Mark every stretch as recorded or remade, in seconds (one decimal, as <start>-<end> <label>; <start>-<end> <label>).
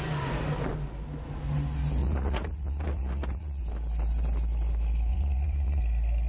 0.0-2.0 recorded; 2.0-3.6 remade; 3.6-5.1 recorded; 5.1-5.8 remade; 5.8-6.3 recorded